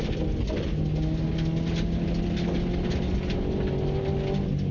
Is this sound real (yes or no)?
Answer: yes